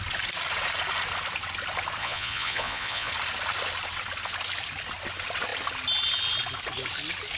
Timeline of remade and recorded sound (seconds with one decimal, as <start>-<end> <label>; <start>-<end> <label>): 0.0-2.0 recorded; 2.0-3.1 remade; 3.1-7.4 recorded